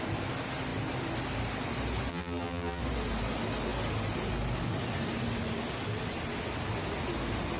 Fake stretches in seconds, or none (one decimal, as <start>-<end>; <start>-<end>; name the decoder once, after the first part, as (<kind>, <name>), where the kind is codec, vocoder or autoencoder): 2.1-2.8 (vocoder, BigVGAN v2)